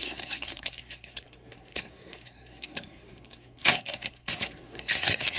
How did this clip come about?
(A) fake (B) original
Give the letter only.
A